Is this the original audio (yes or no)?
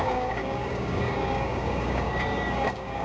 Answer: no